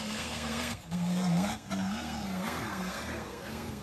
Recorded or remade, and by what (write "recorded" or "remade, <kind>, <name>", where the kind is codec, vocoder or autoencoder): remade, codec, SNAC